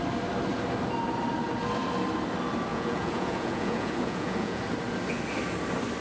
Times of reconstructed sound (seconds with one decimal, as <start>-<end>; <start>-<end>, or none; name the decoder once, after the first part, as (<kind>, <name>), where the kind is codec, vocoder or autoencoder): 2.7-4.6 (vocoder, Vocos)